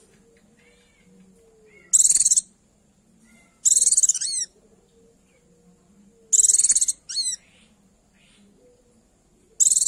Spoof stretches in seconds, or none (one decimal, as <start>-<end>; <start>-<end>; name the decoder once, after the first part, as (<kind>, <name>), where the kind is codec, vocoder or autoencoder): none